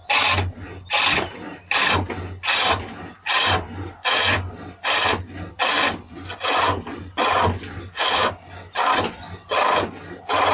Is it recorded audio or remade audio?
recorded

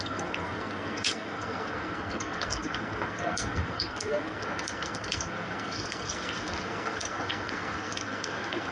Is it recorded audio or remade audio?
remade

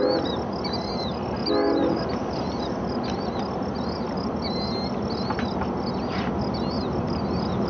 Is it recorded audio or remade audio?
recorded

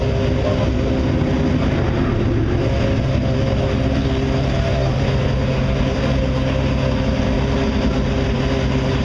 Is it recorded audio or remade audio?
recorded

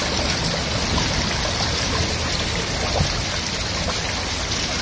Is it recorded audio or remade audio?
recorded